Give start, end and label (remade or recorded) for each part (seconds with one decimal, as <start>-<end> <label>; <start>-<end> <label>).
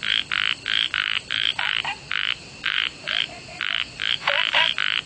0.0-1.0 recorded; 1.0-4.1 remade; 4.1-5.1 recorded